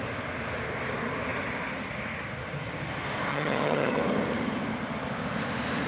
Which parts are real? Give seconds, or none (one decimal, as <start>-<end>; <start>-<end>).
0.0-3.3; 4.0-5.9